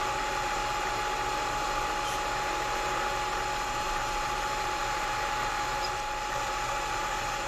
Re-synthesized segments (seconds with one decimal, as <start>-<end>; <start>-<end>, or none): 0.0-0.6; 3.8-7.5